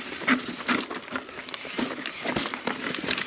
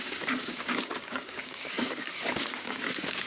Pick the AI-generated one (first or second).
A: second